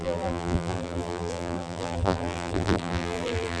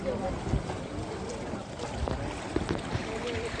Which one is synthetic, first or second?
first